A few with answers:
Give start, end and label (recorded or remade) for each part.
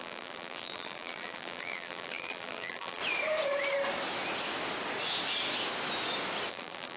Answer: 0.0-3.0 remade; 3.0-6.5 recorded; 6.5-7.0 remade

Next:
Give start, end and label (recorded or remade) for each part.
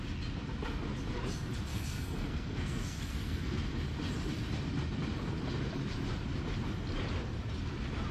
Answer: 0.0-1.7 recorded; 1.7-3.6 remade; 3.6-8.1 recorded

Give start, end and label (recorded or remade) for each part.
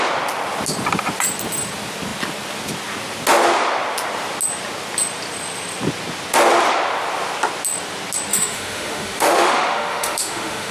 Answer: 0.0-8.3 recorded; 8.3-10.7 remade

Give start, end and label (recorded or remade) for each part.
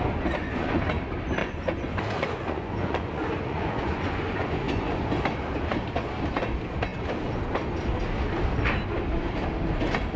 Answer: 0.0-0.4 recorded; 0.4-0.9 remade; 0.9-1.4 recorded; 1.4-5.0 remade; 5.0-10.2 recorded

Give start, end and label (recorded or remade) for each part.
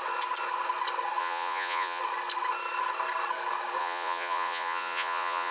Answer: 0.0-1.2 recorded; 1.2-2.0 remade; 2.0-3.8 recorded; 3.8-5.5 remade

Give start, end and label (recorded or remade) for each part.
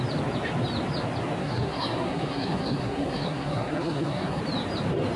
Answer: 0.0-1.4 recorded; 1.4-4.4 remade; 4.4-5.2 recorded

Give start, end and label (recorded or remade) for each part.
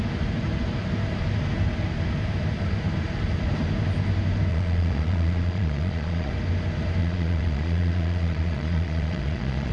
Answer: 0.0-4.5 recorded; 4.5-6.3 remade; 6.3-7.0 recorded; 7.0-9.7 remade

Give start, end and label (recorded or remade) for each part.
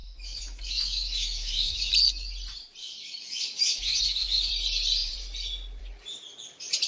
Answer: 0.0-1.9 remade; 1.9-2.8 recorded; 2.8-4.5 remade; 4.5-6.9 recorded